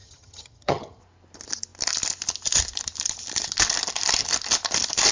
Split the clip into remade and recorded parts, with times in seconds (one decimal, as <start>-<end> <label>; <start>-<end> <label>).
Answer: 0.0-1.0 remade; 1.0-5.1 recorded